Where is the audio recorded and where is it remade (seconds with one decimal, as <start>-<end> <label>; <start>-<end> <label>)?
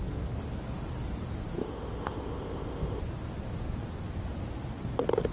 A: 0.0-1.6 recorded; 1.6-3.0 remade; 3.0-5.3 recorded